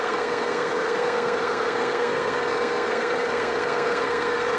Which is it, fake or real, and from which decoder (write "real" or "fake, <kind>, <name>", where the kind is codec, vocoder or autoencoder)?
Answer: fake, codec, SNAC